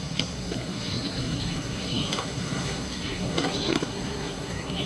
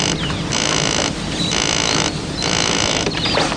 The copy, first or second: first